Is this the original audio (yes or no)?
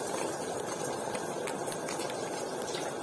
no